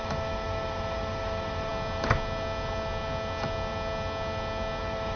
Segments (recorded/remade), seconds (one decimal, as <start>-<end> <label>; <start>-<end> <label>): 0.0-1.7 remade; 1.7-4.8 recorded; 4.8-5.2 remade

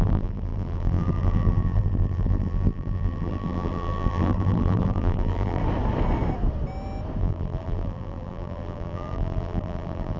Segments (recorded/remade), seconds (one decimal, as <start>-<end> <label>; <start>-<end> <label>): 0.0-5.6 remade; 5.6-7.2 recorded; 7.2-10.2 remade

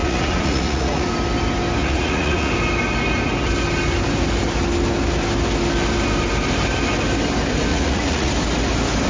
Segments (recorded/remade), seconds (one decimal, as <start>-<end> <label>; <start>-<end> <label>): 0.0-1.1 remade; 1.1-1.8 recorded; 1.8-2.5 remade; 2.5-7.7 recorded; 7.7-8.3 remade; 8.3-9.1 recorded

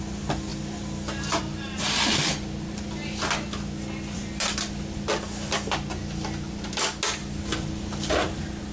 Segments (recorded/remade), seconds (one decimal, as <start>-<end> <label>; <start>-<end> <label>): 0.0-8.7 recorded